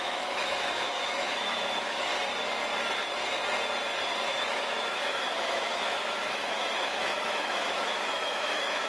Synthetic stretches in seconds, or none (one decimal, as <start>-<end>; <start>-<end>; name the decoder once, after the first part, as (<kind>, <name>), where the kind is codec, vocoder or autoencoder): 0.0-2.1 (autoencoder, DAC-VAE); 4.3-8.9